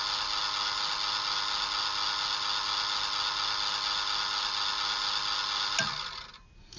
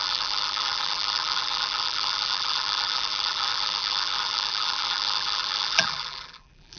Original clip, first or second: first